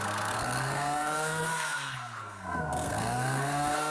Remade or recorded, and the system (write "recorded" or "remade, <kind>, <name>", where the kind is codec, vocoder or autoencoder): remade, codec, SNAC